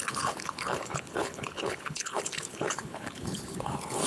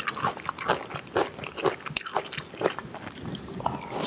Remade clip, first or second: first